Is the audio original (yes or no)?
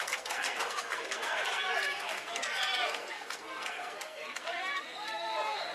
no